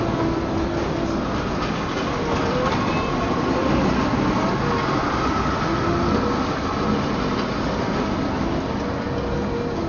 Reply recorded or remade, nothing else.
recorded